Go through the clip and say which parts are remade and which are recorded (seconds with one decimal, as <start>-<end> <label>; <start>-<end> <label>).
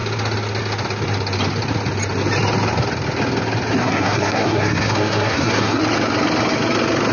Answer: 0.0-3.8 recorded; 3.8-5.8 remade; 5.8-7.1 recorded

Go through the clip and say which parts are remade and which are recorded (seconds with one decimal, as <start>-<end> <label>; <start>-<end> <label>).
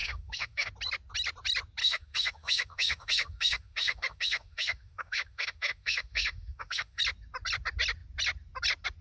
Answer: 0.0-0.7 remade; 0.7-1.8 recorded; 1.8-7.0 remade; 7.0-9.0 recorded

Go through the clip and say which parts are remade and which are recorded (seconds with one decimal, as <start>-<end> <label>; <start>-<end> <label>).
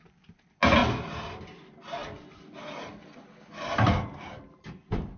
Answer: 0.0-5.2 recorded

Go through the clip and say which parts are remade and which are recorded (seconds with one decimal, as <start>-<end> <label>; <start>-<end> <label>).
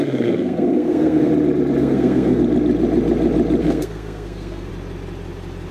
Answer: 0.0-1.3 remade; 1.3-1.8 recorded; 1.8-2.4 remade; 2.4-3.6 recorded; 3.6-4.7 remade; 4.7-5.7 recorded